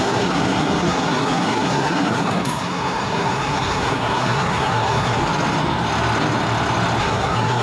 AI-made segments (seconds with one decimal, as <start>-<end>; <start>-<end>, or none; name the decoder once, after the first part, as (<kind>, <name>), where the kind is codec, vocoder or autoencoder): 0.0-5.2 (codec, SNAC); 7.0-7.6